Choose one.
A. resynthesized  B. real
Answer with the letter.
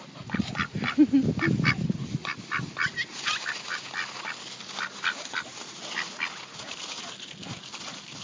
B